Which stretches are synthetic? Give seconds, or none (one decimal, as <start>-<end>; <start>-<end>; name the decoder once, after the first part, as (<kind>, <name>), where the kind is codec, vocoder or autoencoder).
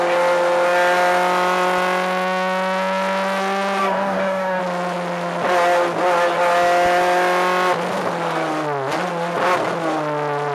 3.8-4.6 (codec, DAC)